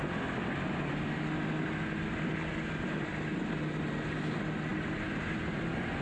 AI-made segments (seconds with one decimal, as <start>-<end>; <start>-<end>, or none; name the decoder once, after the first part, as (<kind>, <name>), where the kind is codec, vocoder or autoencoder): none